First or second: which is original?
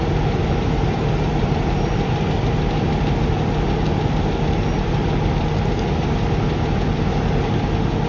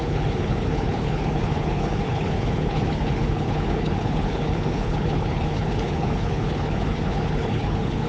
first